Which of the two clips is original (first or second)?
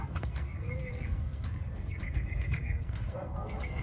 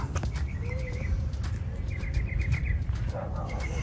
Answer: second